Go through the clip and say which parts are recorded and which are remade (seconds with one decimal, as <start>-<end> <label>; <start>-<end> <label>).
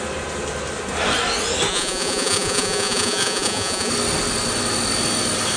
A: 0.0-1.7 recorded; 1.7-3.9 remade; 3.9-5.6 recorded